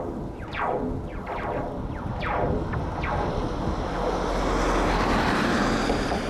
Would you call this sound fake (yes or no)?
no